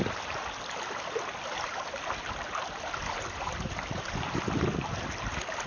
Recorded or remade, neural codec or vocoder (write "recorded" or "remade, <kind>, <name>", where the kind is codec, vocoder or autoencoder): recorded